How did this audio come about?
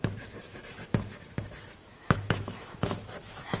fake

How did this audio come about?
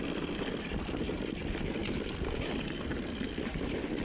real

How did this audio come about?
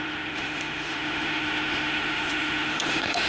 fake